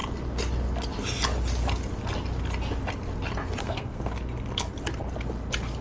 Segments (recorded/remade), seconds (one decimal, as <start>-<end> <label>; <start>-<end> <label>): 0.0-3.6 recorded; 3.6-4.1 remade; 4.1-5.8 recorded

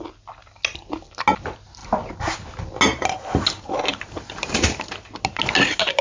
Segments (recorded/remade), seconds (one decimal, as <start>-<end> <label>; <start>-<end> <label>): 0.0-6.0 recorded

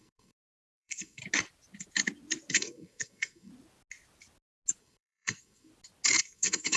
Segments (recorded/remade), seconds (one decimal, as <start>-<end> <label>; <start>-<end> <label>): 0.0-1.2 remade; 1.2-2.5 recorded; 2.5-3.5 remade; 3.5-4.8 recorded; 4.8-5.7 remade; 5.7-6.2 recorded; 6.2-6.8 remade